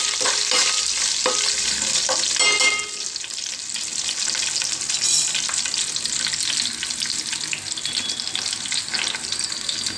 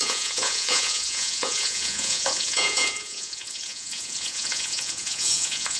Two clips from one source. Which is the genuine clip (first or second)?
first